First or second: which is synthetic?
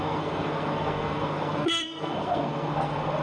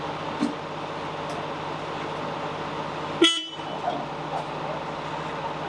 first